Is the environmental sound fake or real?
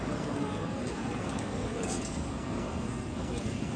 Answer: fake